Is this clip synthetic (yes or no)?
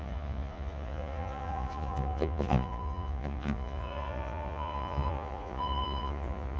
yes